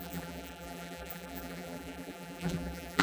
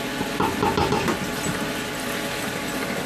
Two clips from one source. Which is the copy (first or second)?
first